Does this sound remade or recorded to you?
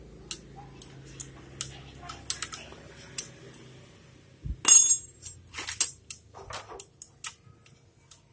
recorded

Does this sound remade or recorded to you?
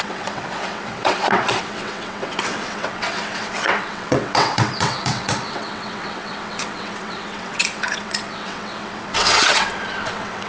remade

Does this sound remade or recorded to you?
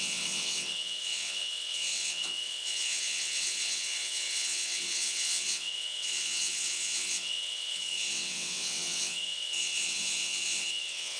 remade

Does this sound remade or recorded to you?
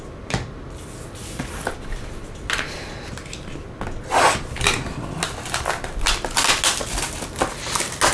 recorded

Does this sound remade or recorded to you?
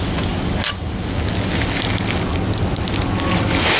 recorded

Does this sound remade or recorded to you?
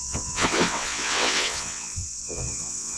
remade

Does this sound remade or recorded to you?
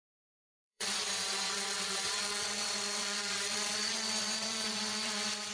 remade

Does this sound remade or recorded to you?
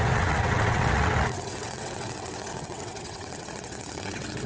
remade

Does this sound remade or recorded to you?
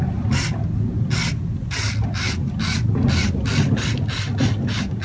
recorded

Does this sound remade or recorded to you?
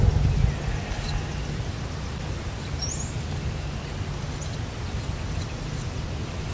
recorded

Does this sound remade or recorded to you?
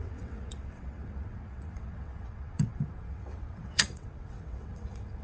remade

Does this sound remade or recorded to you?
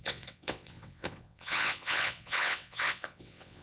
remade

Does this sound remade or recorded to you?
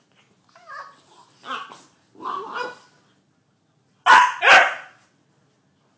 recorded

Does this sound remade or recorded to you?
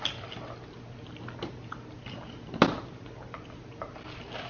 recorded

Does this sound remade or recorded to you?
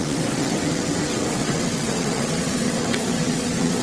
remade